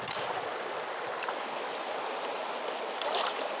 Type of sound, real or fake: real